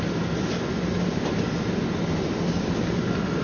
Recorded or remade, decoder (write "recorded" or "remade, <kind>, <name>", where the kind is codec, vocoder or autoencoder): recorded